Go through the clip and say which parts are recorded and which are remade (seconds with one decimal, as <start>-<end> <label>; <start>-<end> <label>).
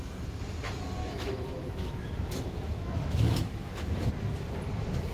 0.0-1.0 recorded; 1.0-4.1 remade; 4.1-5.1 recorded